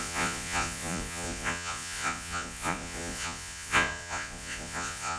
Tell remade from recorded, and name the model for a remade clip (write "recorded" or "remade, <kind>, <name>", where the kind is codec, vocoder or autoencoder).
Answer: remade, vocoder, Vocos